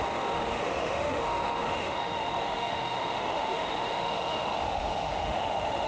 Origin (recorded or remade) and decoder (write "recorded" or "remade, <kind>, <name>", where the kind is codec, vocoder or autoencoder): remade, autoencoder, DAC-VAE